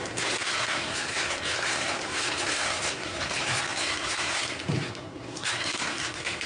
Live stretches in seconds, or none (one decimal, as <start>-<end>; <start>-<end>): none